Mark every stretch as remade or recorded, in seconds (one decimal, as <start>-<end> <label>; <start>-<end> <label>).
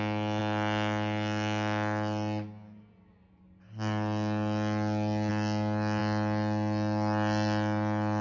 0.0-8.2 recorded